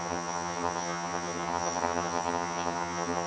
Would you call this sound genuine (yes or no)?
no